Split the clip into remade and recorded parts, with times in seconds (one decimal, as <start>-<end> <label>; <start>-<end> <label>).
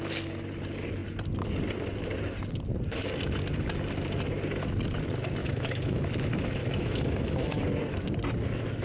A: 0.0-5.4 recorded; 5.4-6.0 remade; 6.0-6.6 recorded; 6.6-7.6 remade; 7.6-8.8 recorded